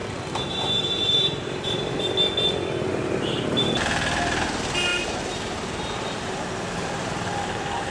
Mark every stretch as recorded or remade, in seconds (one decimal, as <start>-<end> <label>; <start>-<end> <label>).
0.0-2.0 remade; 2.0-2.9 recorded; 2.9-3.7 remade; 3.7-4.9 recorded; 4.9-7.9 remade